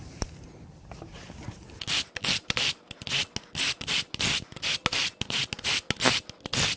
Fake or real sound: real